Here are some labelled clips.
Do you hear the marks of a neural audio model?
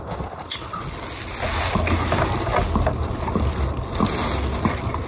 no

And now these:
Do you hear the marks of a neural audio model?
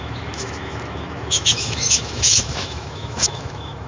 yes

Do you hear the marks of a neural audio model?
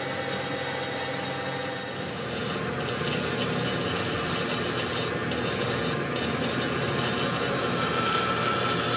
no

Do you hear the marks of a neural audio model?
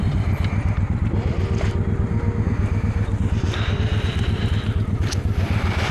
yes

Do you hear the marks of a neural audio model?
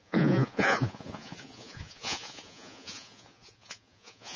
yes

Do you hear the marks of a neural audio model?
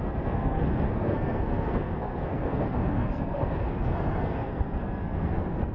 yes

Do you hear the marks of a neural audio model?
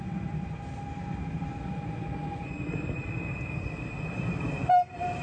yes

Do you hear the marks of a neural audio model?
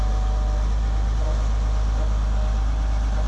no